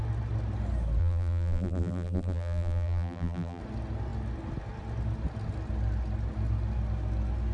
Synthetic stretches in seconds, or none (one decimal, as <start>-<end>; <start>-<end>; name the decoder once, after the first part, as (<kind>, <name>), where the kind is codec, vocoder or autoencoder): 1.0-3.6 (vocoder, BigVGAN v2)